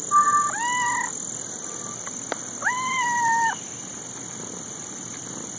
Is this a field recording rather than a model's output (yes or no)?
yes